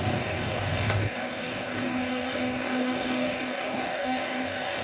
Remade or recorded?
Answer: remade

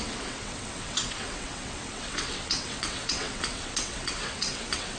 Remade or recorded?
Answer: remade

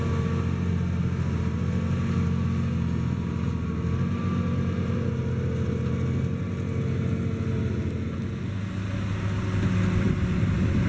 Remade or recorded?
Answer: recorded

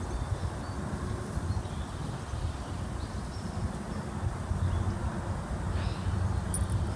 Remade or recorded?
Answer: recorded